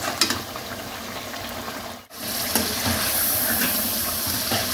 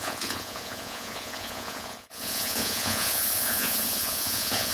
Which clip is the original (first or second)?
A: first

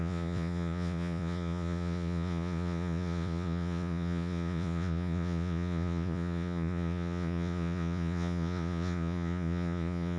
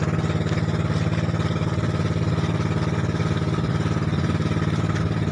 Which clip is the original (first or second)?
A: second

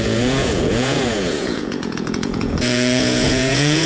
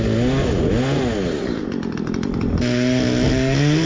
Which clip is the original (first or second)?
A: second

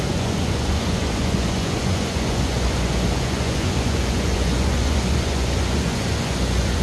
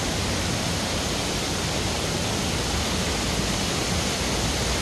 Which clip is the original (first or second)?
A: second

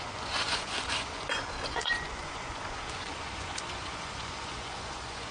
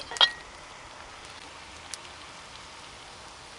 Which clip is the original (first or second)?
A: second